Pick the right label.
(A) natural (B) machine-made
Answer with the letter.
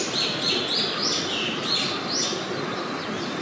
A